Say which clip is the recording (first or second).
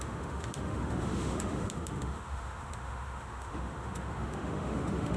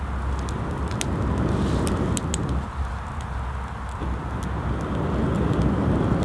second